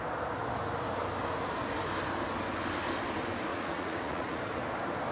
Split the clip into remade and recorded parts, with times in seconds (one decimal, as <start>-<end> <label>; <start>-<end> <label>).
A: 0.0-3.5 recorded; 3.5-4.4 remade; 4.4-5.1 recorded

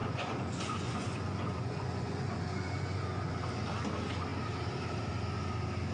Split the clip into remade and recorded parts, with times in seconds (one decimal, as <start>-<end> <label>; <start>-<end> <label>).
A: 0.0-3.3 remade; 3.3-5.9 recorded

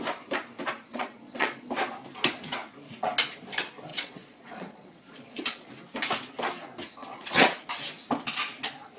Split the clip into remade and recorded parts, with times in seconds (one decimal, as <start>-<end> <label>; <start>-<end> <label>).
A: 0.0-0.9 recorded; 0.9-1.7 remade; 1.7-3.9 recorded; 3.9-5.7 remade; 5.7-7.0 recorded; 7.0-7.7 remade; 7.7-9.0 recorded

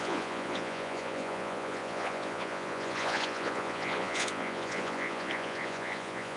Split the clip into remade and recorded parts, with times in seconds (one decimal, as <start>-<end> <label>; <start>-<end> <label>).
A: 0.0-6.4 remade

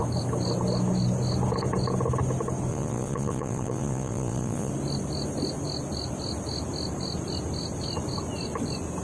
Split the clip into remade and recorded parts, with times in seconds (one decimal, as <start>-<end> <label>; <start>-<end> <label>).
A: 0.0-2.7 recorded; 2.7-4.7 remade; 4.7-9.0 recorded

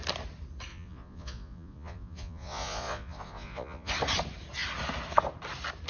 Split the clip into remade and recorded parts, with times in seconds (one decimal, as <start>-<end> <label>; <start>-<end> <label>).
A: 0.0-0.7 recorded; 0.7-3.9 remade; 3.9-5.9 recorded